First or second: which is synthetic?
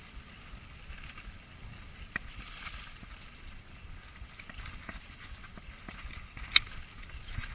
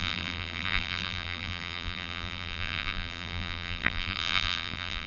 second